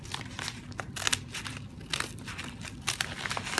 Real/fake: real